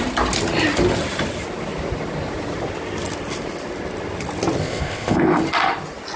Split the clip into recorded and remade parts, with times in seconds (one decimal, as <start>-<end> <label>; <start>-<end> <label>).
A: 0.0-4.6 recorded; 4.6-5.4 remade; 5.4-6.2 recorded